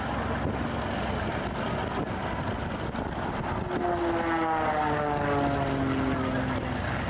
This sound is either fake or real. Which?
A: real